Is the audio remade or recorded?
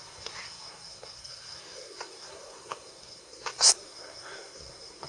remade